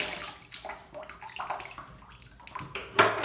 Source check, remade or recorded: recorded